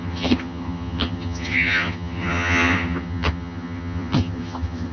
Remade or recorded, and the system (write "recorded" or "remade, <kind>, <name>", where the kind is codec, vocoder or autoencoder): remade, vocoder, HiFi-GAN